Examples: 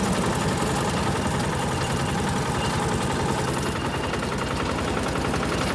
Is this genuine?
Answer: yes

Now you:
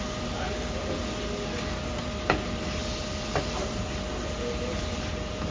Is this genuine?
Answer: yes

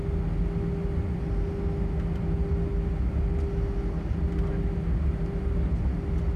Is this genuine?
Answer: yes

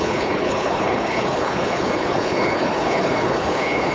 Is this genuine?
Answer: no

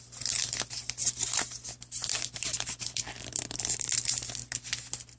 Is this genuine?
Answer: no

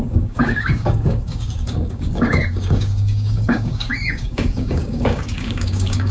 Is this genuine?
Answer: no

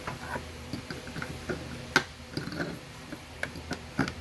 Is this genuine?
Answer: yes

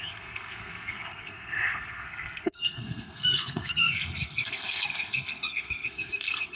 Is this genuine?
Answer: no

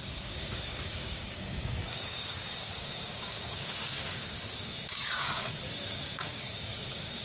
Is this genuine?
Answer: no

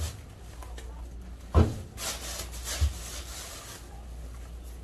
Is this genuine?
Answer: yes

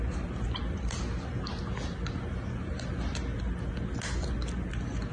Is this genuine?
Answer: yes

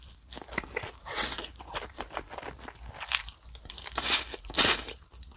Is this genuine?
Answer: yes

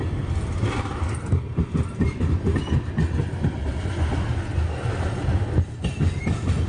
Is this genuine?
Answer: yes